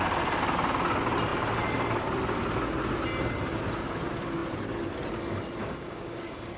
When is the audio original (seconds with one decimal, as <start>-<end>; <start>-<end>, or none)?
0.0-5.6